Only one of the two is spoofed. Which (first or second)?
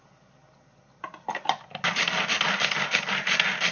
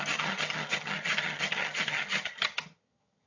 second